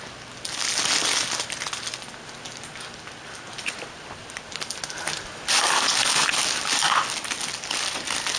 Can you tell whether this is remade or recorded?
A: recorded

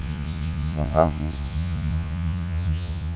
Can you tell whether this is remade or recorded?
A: remade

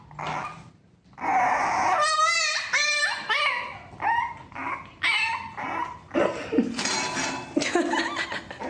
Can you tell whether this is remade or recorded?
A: recorded